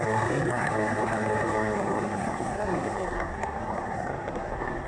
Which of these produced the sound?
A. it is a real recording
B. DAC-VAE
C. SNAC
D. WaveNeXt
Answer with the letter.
C